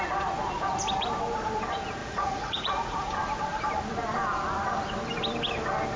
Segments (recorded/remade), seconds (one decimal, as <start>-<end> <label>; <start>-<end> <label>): 0.0-2.0 recorded; 2.0-3.1 remade; 3.1-6.0 recorded